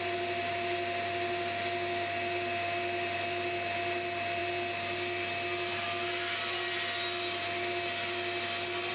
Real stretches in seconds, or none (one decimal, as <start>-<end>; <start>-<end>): 0.0-8.9